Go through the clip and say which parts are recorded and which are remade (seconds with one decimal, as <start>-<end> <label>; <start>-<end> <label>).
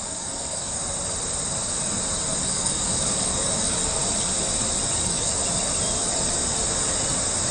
0.0-0.8 remade; 0.8-2.4 recorded; 2.4-4.0 remade; 4.0-5.0 recorded; 5.0-5.4 remade; 5.4-7.5 recorded